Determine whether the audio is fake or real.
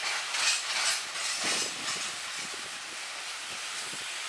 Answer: real